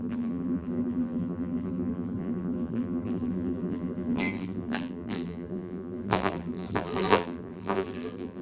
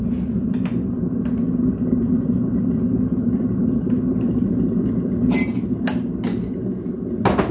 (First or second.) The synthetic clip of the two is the first